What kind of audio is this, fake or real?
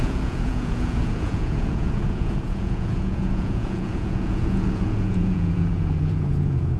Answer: fake